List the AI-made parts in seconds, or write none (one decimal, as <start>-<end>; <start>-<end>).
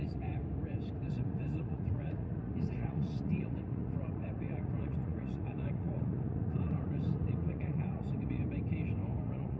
0.0-0.4; 1.1-8.4; 9.2-9.6